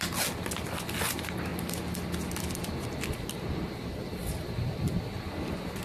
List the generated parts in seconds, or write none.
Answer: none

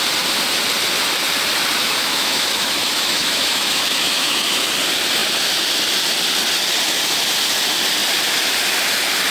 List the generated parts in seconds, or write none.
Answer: 1.8-4.7 (autoencoder, DAC-VAE)

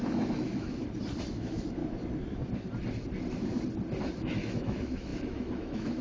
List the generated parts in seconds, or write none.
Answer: 0.0-0.8 (autoencoder, DAC-VAE); 1.3-1.8; 4.0-6.0